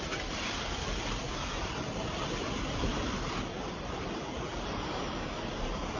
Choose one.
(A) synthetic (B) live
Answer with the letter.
B